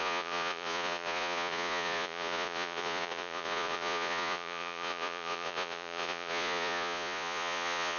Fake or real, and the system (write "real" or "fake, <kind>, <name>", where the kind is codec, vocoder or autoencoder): fake, vocoder, Vocos